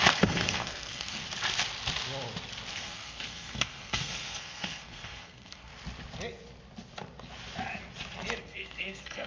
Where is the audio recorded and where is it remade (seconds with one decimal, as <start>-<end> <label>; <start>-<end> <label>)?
0.0-1.2 remade; 1.2-2.7 recorded; 2.7-5.7 remade; 5.7-8.4 recorded; 8.4-9.3 remade